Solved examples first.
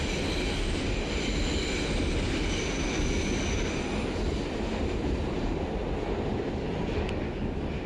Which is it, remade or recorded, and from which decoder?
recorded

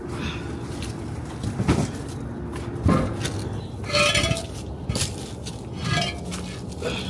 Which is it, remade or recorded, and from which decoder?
recorded